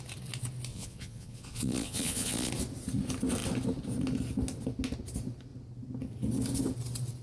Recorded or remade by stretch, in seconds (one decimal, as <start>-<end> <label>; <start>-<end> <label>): 0.0-0.7 recorded; 0.7-2.5 remade; 2.5-7.2 recorded